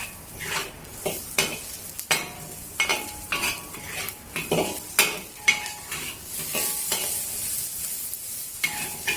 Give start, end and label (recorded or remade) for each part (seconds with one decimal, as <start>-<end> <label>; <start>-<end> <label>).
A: 0.0-2.9 recorded; 2.9-3.7 remade; 3.7-9.2 recorded